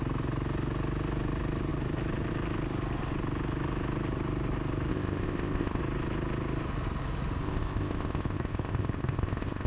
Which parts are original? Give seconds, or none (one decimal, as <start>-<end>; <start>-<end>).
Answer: 0.0-4.9; 5.8-7.4